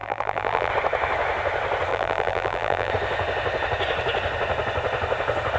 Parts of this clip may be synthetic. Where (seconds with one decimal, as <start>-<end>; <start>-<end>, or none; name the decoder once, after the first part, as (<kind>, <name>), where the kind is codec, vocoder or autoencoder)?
0.0-0.7 (vocoder, BigVGAN v2); 1.9-2.9